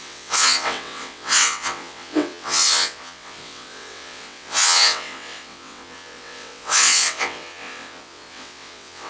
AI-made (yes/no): yes